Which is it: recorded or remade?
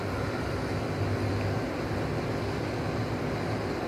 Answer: recorded